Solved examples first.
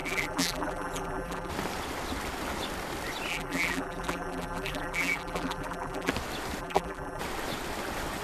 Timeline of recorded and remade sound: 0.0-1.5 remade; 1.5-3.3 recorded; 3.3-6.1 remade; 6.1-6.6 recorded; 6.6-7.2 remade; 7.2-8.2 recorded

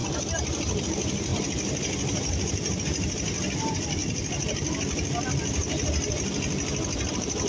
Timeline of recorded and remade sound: 0.0-0.8 recorded; 0.8-4.0 remade; 4.0-7.1 recorded; 7.1-7.5 remade

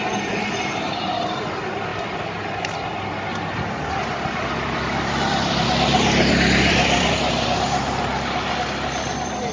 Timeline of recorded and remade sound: 0.0-1.9 recorded; 1.9-7.1 remade; 7.1-9.5 recorded

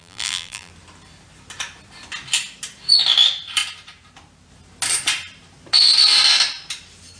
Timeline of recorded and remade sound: 0.0-0.7 remade; 0.7-7.2 recorded

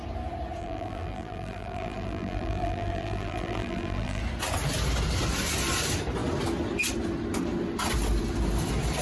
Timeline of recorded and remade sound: 0.0-0.6 recorded; 0.6-4.2 remade; 4.2-9.0 recorded